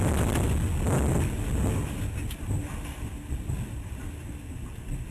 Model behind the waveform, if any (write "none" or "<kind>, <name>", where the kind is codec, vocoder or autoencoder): none